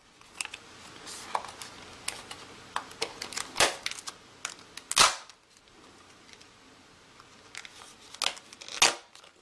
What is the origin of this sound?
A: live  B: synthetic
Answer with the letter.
A